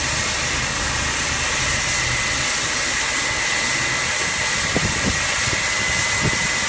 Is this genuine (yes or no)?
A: yes